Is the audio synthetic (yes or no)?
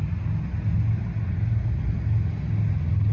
no